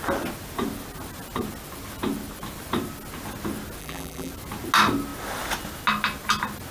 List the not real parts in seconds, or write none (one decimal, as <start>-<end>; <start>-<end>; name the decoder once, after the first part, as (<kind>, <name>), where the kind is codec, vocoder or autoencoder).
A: 3.8-4.3 (vocoder, BigVGAN v2)